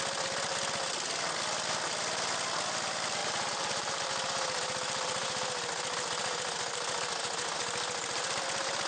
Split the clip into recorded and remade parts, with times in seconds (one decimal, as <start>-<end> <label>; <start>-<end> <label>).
0.0-3.2 recorded; 3.2-4.1 remade; 4.1-8.9 recorded